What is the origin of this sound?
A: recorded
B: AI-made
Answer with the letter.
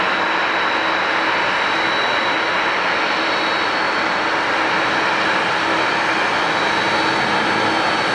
A